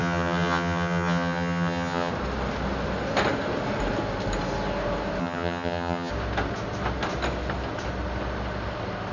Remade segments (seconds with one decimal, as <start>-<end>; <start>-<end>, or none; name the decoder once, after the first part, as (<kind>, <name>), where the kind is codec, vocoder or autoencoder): 0.0-2.1 (vocoder, HiFi-GAN); 5.2-6.1